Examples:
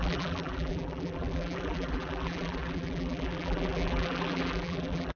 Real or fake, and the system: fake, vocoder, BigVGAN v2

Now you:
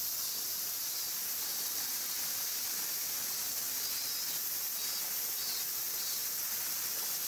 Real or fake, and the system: real